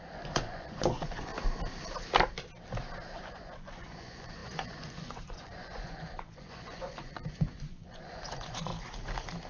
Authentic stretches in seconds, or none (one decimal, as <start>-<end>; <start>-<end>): 1.3-3.2; 8.7-9.5